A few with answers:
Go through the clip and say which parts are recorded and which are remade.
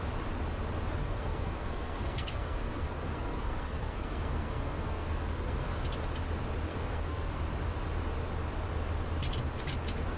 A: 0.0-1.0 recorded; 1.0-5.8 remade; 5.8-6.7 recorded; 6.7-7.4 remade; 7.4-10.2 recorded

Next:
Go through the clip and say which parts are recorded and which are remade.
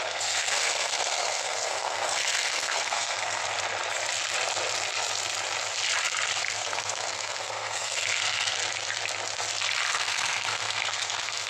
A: 0.0-3.4 remade; 3.4-6.4 recorded; 6.4-8.6 remade; 8.6-9.9 recorded; 9.9-11.5 remade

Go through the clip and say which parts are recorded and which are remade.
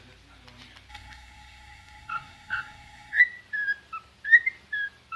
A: 0.0-0.9 recorded; 0.9-3.2 remade; 3.2-5.2 recorded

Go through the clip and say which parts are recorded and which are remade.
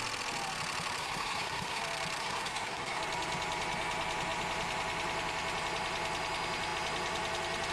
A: 0.0-1.0 recorded; 1.0-1.8 remade; 1.8-2.2 recorded; 2.2-3.0 remade; 3.0-7.7 recorded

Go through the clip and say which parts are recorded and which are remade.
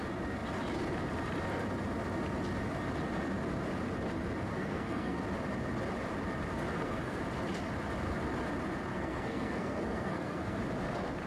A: 0.0-4.5 recorded; 4.5-5.2 remade; 5.2-6.7 recorded; 6.7-7.2 remade; 7.2-8.9 recorded; 8.9-10.6 remade; 10.6-11.3 recorded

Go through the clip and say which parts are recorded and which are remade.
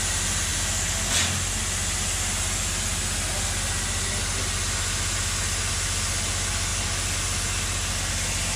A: 0.0-8.6 recorded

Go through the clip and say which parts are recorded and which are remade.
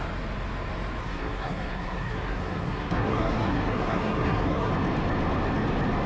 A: 0.0-1.0 recorded; 1.0-4.7 remade; 4.7-6.1 recorded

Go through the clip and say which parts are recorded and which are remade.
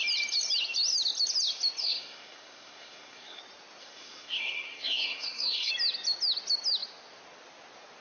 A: 0.0-1.8 recorded; 1.8-3.4 remade; 3.4-3.8 recorded; 3.8-5.7 remade; 5.7-8.0 recorded